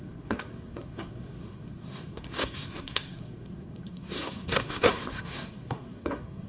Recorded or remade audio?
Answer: remade